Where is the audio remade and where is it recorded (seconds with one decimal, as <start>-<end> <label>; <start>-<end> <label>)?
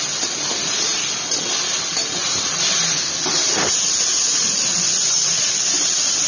0.0-6.3 recorded